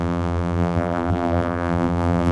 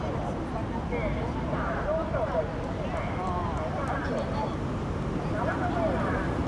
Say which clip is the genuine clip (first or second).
second